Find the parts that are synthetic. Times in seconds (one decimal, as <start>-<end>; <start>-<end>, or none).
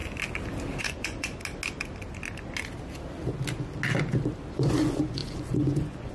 0.8-1.4; 4.5-6.1